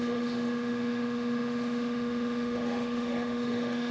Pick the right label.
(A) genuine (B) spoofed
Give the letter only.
B